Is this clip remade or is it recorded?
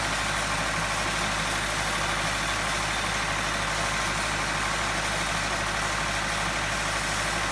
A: recorded